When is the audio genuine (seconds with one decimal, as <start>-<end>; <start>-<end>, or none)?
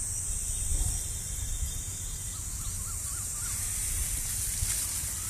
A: 0.0-5.3